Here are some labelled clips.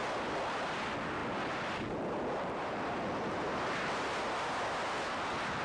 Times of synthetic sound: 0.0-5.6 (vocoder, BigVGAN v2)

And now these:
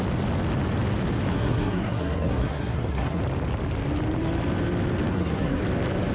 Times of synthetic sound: 1.3-3.2 (codec, SNAC); 5.1-5.6

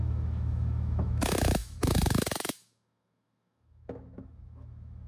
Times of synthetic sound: 0.0-5.1 (autoencoder, DAC-VAE)

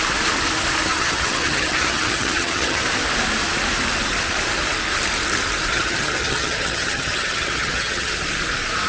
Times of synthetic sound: 0.9-2.8 (vocoder, HiFi-GAN); 5.7-8.1

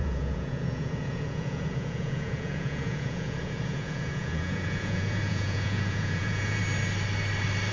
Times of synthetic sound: 0.0-6.6 (vocoder, Vocos)